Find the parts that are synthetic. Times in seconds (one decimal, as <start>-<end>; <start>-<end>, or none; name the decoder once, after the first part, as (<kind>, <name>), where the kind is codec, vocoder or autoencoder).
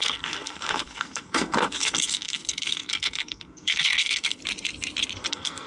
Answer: 0.0-4.4 (codec, SNAC); 5.3-5.7